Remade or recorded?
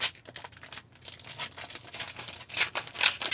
recorded